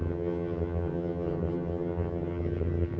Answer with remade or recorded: remade